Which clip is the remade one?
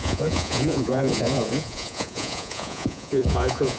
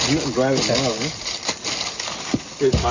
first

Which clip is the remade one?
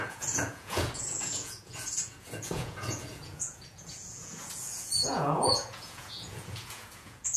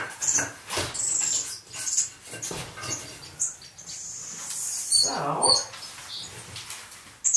first